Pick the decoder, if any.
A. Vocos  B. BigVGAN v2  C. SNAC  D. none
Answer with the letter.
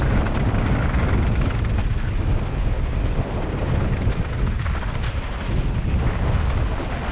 D